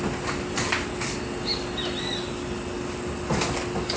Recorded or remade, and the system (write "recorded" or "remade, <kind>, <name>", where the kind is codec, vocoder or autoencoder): recorded